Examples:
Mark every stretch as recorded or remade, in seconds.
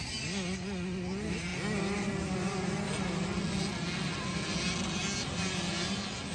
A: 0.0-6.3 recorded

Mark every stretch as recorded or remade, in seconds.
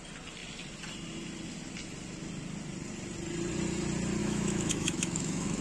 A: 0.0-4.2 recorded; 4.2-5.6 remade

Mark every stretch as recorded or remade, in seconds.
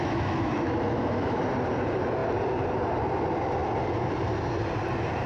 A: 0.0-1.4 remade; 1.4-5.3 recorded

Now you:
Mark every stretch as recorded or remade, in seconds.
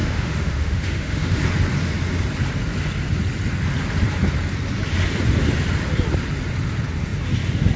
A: 0.0-1.4 remade; 1.4-7.8 recorded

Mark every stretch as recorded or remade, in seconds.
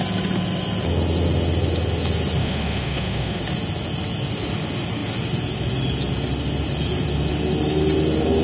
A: 0.0-2.4 recorded; 2.4-3.4 remade; 3.4-8.4 recorded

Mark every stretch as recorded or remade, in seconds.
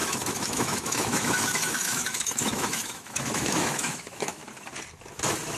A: 0.0-4.4 remade; 4.4-5.6 recorded